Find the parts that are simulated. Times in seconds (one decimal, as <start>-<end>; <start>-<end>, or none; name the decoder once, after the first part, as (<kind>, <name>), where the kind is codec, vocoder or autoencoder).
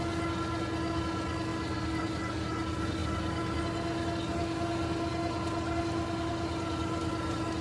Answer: 1.5-2.1 (vocoder, BigVGAN v2); 3.0-3.6